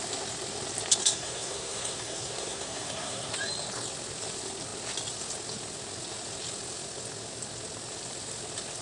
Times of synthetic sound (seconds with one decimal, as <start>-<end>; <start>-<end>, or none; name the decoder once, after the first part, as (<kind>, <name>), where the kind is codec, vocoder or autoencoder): 1.0-3.3 (codec, SNAC)